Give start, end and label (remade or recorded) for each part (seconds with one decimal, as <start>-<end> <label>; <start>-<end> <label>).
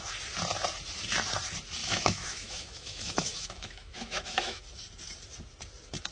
0.0-1.8 recorded; 1.8-4.6 remade; 4.6-6.1 recorded